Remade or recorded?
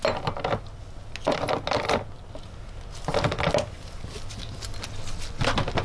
recorded